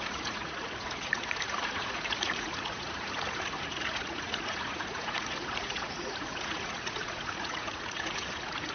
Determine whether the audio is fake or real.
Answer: fake